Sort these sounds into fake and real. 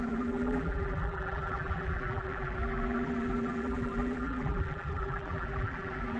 fake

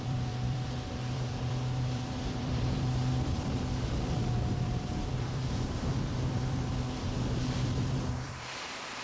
fake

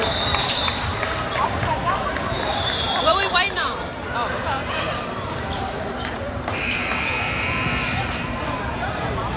fake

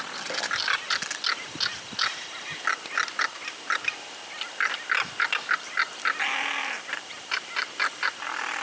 real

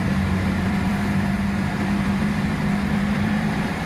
fake